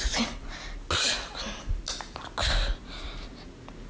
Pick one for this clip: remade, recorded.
recorded